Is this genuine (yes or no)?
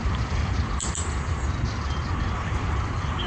no